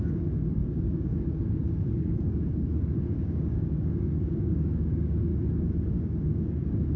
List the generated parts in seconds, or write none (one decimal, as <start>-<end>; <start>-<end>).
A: 0.0-5.3; 5.9-7.0